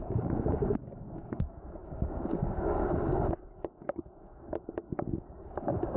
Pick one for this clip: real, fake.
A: fake